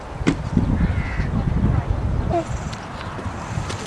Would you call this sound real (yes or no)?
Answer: yes